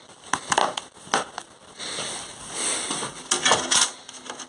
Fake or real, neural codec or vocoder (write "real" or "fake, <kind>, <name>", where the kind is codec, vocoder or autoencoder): real